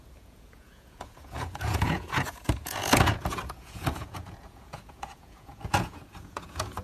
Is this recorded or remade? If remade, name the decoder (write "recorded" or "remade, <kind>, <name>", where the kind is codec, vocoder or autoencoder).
remade, vocoder, Vocos